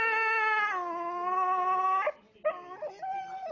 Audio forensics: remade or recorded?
recorded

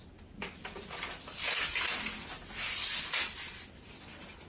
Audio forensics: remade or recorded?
recorded